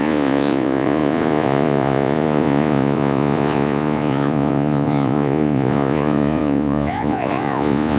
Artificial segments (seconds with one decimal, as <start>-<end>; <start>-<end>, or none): 0.0-8.0